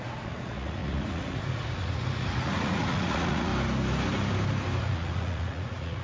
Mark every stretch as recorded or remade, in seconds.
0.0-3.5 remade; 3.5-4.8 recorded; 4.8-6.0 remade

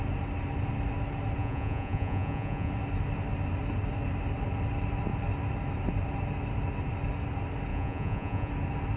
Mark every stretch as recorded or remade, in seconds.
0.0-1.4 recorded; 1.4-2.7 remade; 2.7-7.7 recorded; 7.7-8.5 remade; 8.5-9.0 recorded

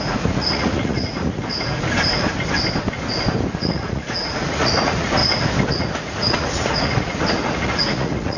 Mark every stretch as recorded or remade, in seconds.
0.0-1.4 remade; 1.4-3.6 recorded; 3.6-5.2 remade; 5.2-5.7 recorded; 5.7-8.4 remade

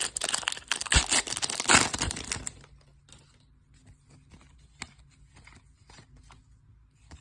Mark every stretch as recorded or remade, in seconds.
0.0-7.2 recorded

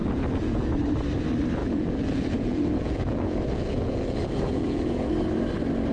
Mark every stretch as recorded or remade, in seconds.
0.0-0.7 remade; 0.7-1.6 recorded; 1.6-5.1 remade; 5.1-5.9 recorded

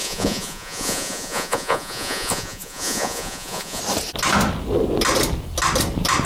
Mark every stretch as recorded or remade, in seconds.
0.0-3.8 remade; 3.8-6.3 recorded

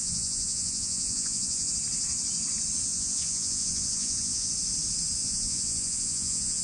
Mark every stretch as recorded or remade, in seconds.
0.0-1.7 remade; 1.7-2.9 recorded; 2.9-4.5 remade; 4.5-5.2 recorded; 5.2-6.6 remade